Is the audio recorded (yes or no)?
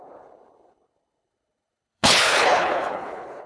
no